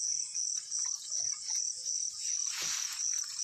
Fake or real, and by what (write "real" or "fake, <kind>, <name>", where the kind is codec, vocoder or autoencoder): fake, vocoder, Vocos